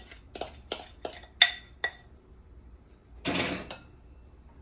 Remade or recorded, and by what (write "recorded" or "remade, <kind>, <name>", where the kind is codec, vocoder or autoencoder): recorded